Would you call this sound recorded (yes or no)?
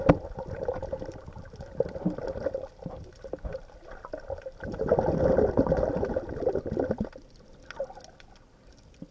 yes